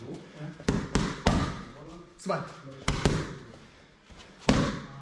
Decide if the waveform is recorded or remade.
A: recorded